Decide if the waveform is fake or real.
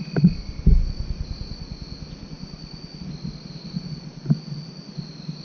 real